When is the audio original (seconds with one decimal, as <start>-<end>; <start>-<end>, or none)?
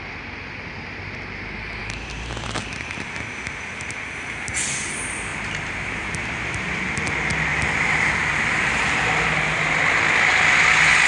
0.0-1.8; 3.1-5.3; 7.0-7.5; 9.1-11.1